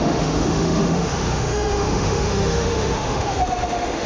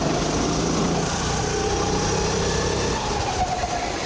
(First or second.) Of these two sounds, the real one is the second